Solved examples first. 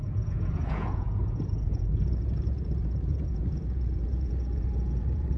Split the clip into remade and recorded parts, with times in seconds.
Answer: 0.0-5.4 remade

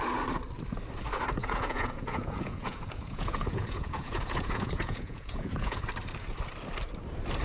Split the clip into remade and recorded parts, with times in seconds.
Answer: 0.0-1.4 recorded; 1.4-5.8 remade; 5.8-7.4 recorded

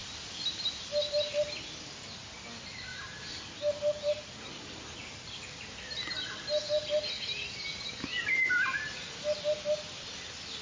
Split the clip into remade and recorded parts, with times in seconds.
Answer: 0.0-2.9 recorded; 2.9-5.3 remade; 5.3-10.6 recorded

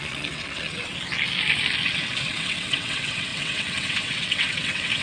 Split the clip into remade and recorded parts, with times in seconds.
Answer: 0.0-0.9 remade; 0.9-1.9 recorded; 1.9-5.0 remade

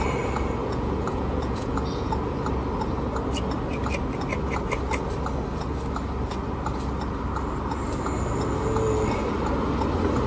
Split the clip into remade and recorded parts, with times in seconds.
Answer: 0.0-0.6 recorded; 0.6-2.2 remade; 2.2-10.3 recorded

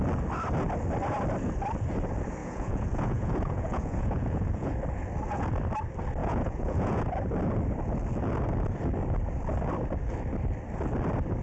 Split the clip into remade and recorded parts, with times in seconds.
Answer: 0.0-2.4 recorded; 2.4-4.7 remade; 4.7-6.2 recorded; 6.2-7.0 remade; 7.0-11.4 recorded

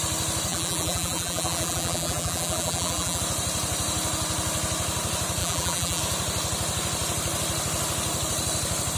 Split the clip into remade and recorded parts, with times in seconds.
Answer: 0.0-0.5 recorded; 0.5-3.2 remade; 3.2-5.4 recorded; 5.4-6.0 remade; 6.0-9.0 recorded